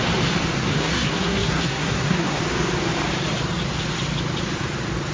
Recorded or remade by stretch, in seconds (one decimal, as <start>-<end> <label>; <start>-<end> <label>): 0.0-0.7 recorded; 0.7-2.4 remade; 2.4-5.1 recorded